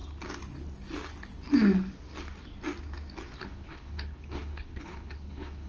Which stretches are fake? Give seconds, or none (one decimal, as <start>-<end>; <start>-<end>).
3.4-5.7